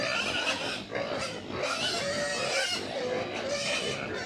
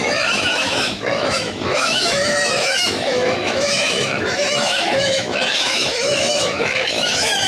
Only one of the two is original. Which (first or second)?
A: first